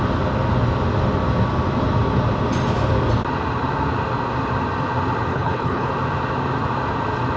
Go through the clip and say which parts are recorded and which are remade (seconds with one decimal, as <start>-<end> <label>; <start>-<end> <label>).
0.0-5.3 recorded; 5.3-5.9 remade; 5.9-7.4 recorded